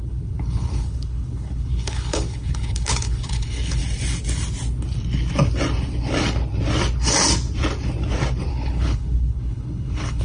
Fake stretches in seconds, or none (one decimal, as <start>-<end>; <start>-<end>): 0.0-3.8; 8.5-10.2